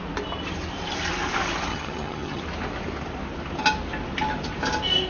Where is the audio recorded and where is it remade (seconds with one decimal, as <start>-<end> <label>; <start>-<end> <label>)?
0.0-1.7 recorded; 1.7-2.4 remade; 2.4-5.1 recorded